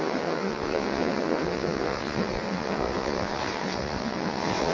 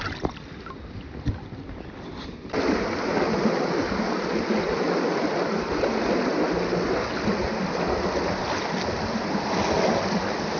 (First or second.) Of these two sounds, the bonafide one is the second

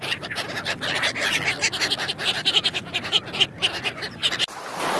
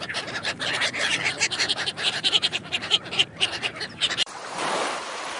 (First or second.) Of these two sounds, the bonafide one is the first